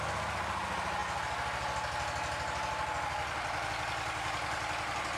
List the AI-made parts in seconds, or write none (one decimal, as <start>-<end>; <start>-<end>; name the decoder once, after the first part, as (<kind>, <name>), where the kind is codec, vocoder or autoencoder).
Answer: none